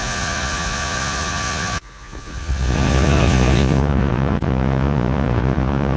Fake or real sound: fake